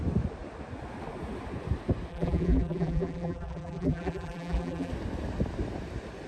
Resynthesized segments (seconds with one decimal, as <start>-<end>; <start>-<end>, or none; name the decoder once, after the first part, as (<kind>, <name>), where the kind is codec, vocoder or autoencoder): 2.1-4.9 (vocoder, BigVGAN v2)